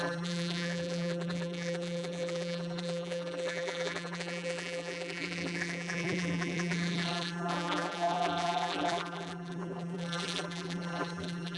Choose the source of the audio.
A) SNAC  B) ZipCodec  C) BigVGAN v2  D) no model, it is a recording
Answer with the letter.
C